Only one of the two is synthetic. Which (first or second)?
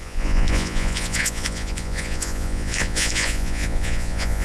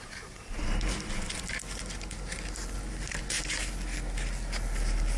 first